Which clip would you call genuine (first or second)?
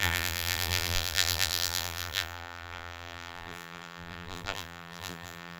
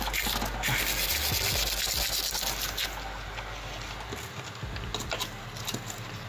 second